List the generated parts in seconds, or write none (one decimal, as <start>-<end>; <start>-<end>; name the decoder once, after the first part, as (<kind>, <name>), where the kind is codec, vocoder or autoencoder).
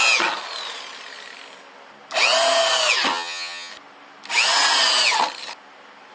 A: 3.1-3.7 (vocoder, HiFi-GAN)